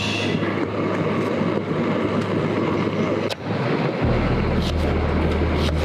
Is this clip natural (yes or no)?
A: yes